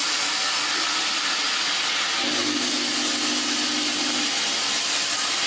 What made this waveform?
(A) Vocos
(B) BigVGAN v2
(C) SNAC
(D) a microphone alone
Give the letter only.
D